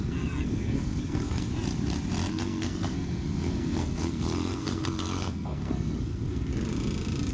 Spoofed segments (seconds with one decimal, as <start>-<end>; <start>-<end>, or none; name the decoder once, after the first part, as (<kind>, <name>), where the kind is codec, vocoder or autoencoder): 0.0-1.5 (codec, SNAC); 2.3-6.5